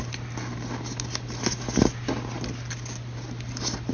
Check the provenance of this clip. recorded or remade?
recorded